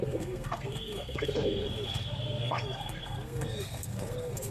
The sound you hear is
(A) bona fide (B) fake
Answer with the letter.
B